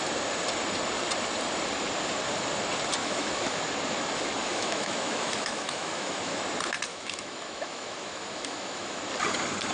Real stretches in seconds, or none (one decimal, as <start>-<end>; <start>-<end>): 0.0-3.0; 3.6-4.4; 6.4-6.9; 9.0-9.7

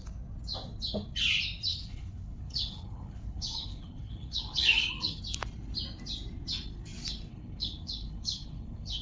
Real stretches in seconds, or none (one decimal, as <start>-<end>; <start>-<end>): 0.0-1.7; 5.2-7.3

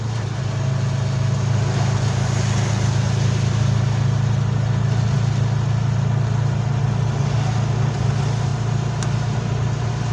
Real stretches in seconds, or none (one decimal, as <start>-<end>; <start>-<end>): 0.0-10.1

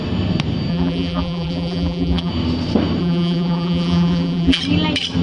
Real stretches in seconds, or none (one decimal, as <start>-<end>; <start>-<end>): 0.0-0.7; 2.3-3.0; 4.6-5.2

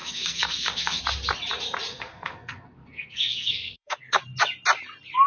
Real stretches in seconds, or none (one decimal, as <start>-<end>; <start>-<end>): 1.0-1.9; 4.2-5.3

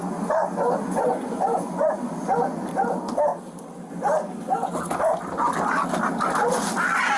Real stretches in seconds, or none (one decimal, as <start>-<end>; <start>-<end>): 0.0-0.8; 2.1-7.2